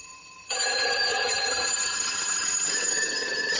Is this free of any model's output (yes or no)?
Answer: no